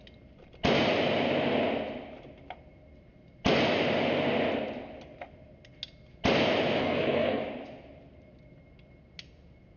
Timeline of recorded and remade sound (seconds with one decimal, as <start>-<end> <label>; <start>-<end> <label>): 0.0-6.8 recorded; 6.8-7.4 remade; 7.4-9.8 recorded